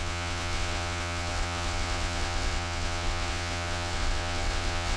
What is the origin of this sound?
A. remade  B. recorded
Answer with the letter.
A